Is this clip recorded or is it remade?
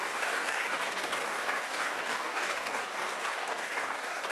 remade